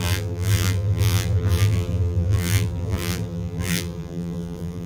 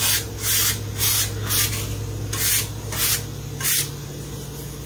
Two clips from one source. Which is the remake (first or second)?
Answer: first